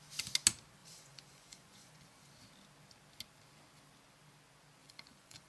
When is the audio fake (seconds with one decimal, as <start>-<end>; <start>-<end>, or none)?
0.8-2.3; 4.8-5.5